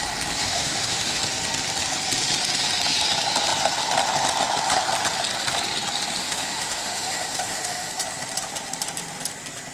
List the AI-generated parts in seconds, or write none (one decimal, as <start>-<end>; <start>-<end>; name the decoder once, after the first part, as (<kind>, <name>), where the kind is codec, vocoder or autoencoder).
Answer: 0.4-1.2 (autoencoder, DAC-VAE); 6.2-7.9